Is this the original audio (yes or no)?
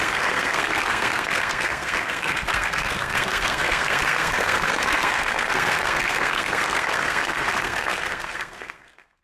no